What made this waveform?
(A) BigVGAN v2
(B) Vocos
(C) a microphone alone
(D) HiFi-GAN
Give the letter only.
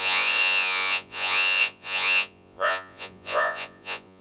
B